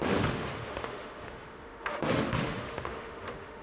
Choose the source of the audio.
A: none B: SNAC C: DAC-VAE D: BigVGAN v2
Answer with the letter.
C